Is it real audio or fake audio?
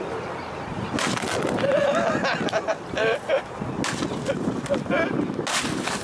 real